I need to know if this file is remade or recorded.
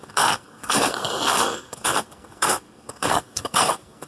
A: remade